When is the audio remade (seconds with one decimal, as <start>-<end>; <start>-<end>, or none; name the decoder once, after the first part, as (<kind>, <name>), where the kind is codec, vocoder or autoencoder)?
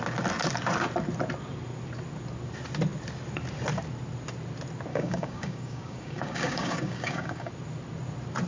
4.9-7.5 (codec, DAC)